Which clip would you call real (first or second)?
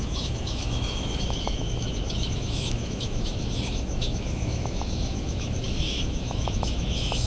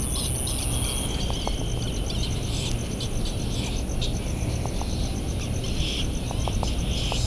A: second